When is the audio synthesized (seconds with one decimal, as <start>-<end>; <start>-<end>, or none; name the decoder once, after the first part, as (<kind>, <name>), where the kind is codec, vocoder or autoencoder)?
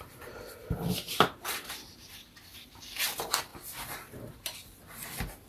0.0-2.5 (vocoder, BigVGAN v2); 3.1-5.5